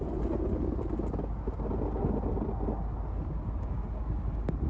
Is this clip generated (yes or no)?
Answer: no